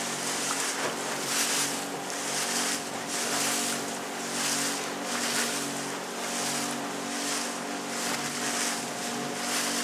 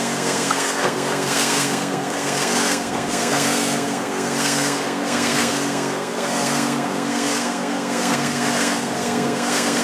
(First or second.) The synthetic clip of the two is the second